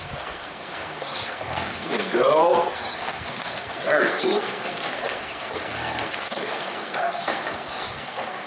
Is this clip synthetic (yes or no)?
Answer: yes